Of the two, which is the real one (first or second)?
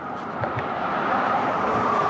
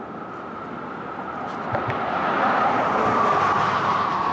second